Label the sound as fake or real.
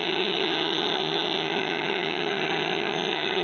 fake